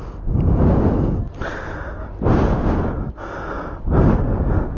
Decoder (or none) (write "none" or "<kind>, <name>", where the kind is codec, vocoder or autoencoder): none